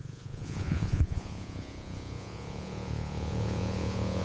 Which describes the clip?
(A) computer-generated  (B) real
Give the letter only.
A